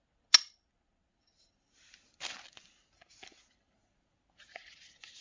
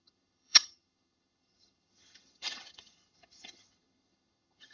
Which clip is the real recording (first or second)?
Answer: first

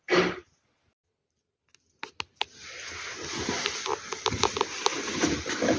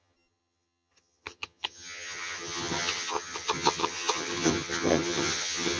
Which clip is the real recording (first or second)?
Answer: first